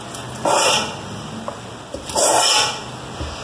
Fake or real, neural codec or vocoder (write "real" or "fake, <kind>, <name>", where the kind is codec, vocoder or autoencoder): real